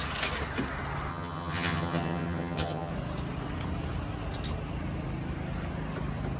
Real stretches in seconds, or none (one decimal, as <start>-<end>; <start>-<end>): 0.0-1.1; 2.9-6.4